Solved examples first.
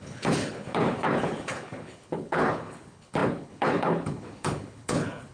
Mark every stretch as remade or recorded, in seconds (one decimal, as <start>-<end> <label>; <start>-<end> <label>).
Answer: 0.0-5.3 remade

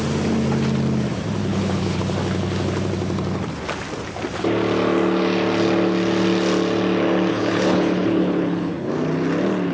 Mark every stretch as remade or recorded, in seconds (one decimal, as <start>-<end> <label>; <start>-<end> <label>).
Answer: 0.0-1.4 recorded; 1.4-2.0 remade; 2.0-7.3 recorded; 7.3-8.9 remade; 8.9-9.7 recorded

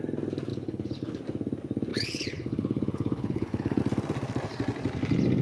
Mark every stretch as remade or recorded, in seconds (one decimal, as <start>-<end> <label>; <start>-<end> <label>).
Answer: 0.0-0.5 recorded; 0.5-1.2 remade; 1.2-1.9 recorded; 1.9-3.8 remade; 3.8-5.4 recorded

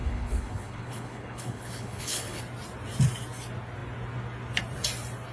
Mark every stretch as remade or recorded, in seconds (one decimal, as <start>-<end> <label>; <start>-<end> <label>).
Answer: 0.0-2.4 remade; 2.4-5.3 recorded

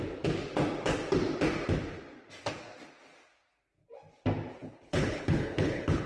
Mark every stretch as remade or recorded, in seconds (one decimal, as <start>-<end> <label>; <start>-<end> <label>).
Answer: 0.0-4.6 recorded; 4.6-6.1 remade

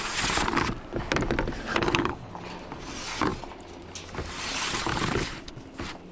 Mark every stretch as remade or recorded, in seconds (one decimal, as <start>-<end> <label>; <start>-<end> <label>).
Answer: 0.0-1.7 recorded; 1.7-2.3 remade; 2.3-4.9 recorded; 4.9-5.5 remade; 5.5-6.1 recorded

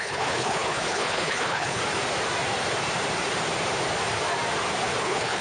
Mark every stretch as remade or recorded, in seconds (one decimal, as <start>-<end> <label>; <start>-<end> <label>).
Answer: 0.0-1.8 remade; 1.8-5.0 recorded; 5.0-5.4 remade

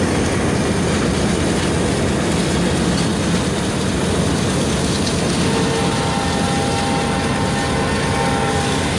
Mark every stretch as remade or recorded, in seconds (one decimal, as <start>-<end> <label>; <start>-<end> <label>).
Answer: 0.0-9.0 recorded